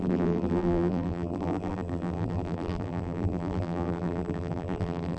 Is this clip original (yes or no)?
no